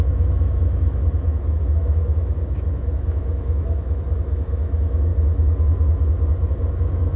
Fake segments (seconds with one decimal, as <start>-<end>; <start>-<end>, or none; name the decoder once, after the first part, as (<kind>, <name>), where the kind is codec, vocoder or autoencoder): 0.0-5.1 (autoencoder, DAC-VAE); 6.7-7.2